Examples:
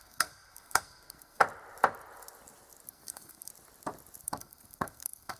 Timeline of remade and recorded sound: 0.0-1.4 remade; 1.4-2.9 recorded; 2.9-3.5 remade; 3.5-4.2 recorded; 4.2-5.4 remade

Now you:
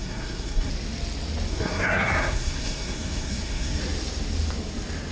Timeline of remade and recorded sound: 0.0-0.7 remade; 0.7-1.5 recorded; 1.5-3.8 remade; 3.8-5.1 recorded